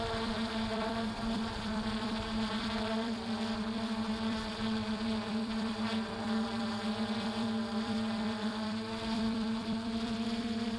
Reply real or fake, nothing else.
fake